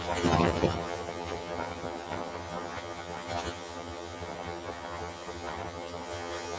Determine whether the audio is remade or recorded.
remade